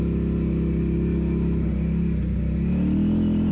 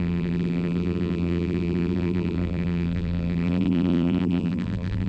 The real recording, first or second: first